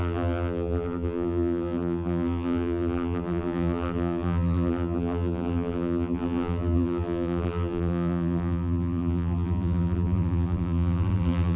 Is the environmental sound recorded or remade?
remade